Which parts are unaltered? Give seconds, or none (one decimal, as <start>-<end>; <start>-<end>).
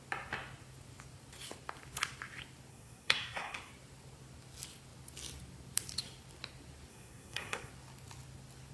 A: 0.0-2.7; 3.7-6.9; 7.7-8.7